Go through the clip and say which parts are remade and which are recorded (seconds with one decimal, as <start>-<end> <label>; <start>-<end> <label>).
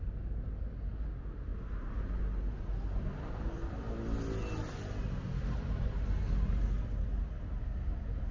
0.0-8.3 recorded